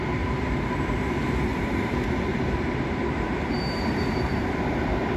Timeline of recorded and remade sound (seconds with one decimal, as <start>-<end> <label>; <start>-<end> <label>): 0.0-1.5 recorded; 1.5-4.6 remade; 4.6-5.2 recorded